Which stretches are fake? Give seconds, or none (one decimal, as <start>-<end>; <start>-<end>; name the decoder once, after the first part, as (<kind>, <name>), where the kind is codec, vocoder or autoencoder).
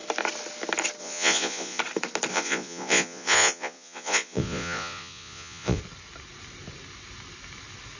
1.0-1.8 (vocoder, Vocos); 2.3-5.8